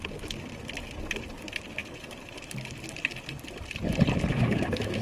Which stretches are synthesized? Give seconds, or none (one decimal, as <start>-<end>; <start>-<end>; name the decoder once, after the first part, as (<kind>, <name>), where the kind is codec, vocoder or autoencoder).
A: 4.3-5.0 (autoencoder, DAC-VAE)